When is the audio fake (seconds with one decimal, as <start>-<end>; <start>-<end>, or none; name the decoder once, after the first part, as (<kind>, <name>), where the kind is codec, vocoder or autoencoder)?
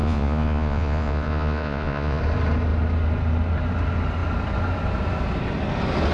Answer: 0.0-2.2 (vocoder, Vocos)